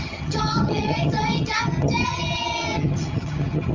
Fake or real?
fake